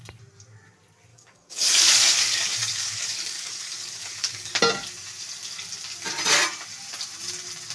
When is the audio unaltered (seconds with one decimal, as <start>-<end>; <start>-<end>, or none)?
0.0-1.1; 4.5-7.7